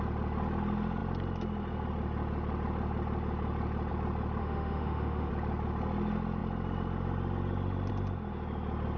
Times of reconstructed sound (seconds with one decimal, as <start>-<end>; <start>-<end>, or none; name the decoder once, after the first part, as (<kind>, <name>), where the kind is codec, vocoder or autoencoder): 4.4-5.3 (autoencoder, DAC-VAE)